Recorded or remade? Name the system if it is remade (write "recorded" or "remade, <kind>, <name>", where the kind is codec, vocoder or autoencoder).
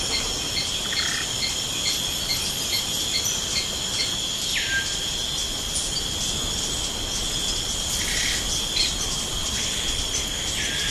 recorded